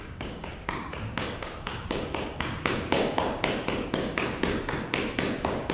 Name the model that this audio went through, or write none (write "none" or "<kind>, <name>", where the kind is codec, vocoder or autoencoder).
codec, DAC